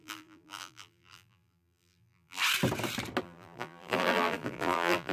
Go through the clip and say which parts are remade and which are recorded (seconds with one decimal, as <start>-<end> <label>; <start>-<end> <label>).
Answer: 0.0-2.4 remade; 2.4-3.2 recorded; 3.2-5.1 remade